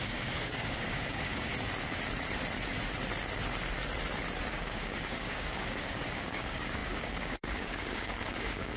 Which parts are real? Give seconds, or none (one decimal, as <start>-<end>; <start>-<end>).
1.5-4.5